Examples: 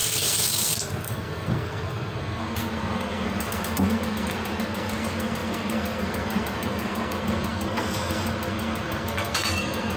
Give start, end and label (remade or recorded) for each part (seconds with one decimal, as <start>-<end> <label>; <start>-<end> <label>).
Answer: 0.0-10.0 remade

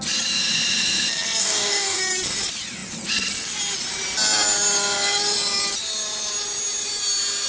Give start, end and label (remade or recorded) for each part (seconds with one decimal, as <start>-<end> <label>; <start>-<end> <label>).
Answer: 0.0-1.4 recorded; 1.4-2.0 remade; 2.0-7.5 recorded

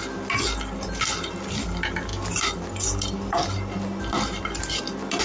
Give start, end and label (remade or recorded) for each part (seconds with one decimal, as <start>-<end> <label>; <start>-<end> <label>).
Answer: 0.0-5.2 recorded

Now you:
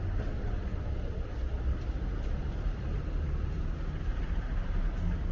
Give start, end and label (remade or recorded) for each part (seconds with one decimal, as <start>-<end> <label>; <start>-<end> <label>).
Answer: 0.0-0.7 remade; 0.7-2.4 recorded; 2.4-5.3 remade

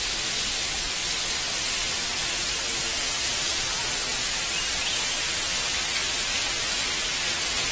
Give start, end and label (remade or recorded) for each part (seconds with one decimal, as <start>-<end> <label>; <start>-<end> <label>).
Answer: 0.0-7.7 recorded